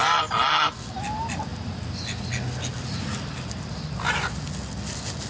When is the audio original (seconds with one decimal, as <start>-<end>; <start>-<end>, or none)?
0.0-5.3